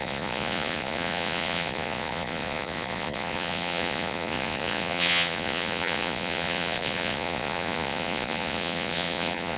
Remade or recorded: remade